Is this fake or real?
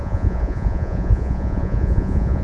fake